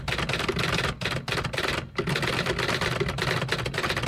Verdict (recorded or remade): recorded